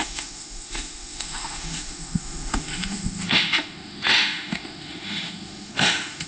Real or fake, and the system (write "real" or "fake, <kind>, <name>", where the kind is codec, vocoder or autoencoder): fake, autoencoder, DAC-VAE